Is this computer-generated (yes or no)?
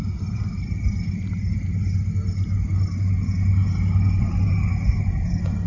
no